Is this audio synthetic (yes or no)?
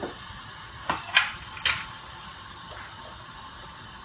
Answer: no